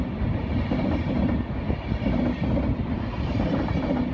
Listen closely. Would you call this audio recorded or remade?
recorded